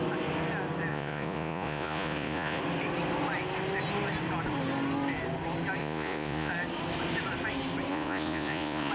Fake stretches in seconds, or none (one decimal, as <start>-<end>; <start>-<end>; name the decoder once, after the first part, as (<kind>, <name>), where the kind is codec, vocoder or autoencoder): 0.9-2.6 (vocoder, Vocos); 5.8-6.5; 7.9-8.9